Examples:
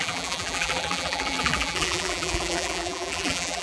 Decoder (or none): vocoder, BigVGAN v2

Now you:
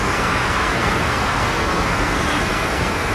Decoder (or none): codec, SNAC